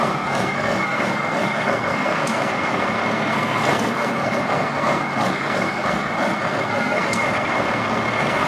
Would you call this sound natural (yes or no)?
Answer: no